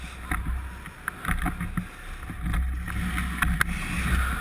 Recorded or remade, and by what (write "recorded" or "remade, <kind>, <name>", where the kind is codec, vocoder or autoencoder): recorded